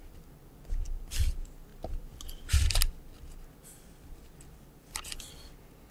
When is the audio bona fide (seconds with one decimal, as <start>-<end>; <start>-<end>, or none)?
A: 0.0-5.9